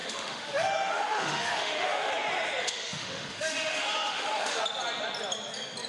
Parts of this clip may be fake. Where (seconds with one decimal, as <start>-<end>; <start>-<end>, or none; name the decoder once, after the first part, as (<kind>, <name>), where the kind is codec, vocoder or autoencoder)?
0.0-2.1 (autoencoder, DAC-VAE); 2.6-4.6